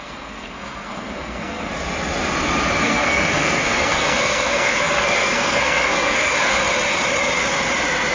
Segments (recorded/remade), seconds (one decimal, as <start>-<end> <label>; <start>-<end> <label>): 0.0-1.7 remade; 1.7-2.8 recorded; 2.8-6.6 remade; 6.6-8.1 recorded